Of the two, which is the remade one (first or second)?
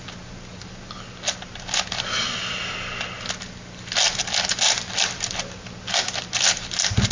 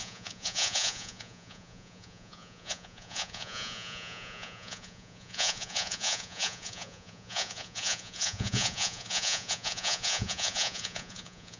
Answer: second